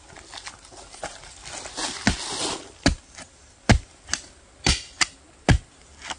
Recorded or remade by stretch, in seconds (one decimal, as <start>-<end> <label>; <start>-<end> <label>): 0.0-6.2 recorded